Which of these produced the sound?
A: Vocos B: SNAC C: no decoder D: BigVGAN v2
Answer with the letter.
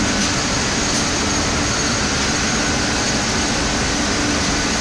C